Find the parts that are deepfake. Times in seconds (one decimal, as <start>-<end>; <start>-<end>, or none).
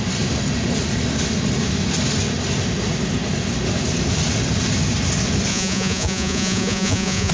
5.5-7.3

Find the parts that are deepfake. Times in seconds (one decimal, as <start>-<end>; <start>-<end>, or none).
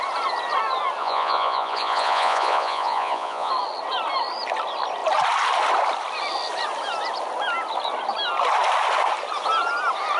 1.0-3.5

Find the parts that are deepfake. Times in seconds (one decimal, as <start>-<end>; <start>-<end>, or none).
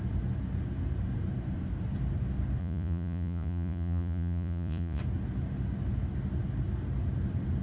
2.6-5.0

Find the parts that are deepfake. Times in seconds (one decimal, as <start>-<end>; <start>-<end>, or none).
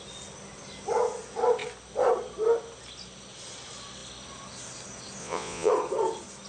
5.2-5.7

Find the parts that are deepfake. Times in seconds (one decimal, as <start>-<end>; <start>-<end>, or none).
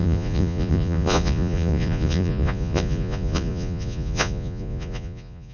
0.0-5.5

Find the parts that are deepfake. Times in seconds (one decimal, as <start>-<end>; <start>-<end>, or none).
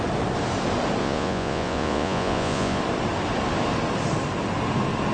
1.0-2.8